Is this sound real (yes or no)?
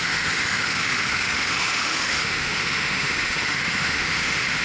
no